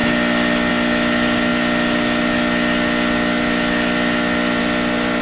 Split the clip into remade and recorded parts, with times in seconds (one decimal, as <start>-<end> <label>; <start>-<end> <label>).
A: 0.0-5.2 recorded